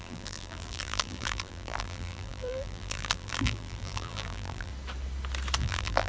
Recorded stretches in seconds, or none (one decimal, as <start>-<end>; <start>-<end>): 4.7-5.6